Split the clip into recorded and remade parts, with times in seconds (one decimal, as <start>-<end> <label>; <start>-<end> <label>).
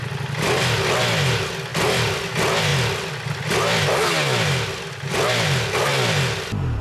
0.0-6.8 recorded